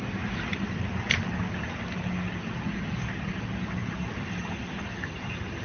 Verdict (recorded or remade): recorded